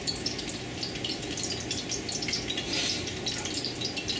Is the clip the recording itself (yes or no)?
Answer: yes